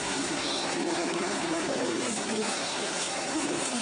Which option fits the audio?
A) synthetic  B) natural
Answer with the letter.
A